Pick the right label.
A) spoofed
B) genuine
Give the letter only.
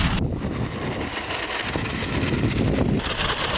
B